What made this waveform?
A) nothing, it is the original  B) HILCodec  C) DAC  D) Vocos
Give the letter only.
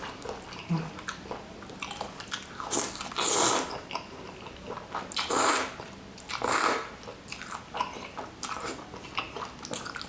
A